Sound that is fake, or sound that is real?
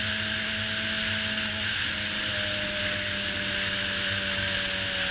real